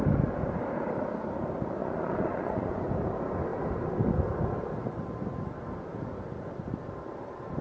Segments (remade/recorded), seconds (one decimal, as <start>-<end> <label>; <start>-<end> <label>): 0.0-1.8 recorded; 1.8-2.9 remade; 2.9-7.6 recorded